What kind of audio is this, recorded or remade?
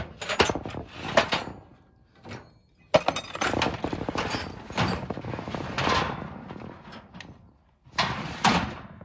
recorded